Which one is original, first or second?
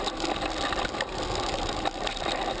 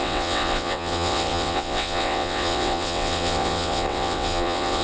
first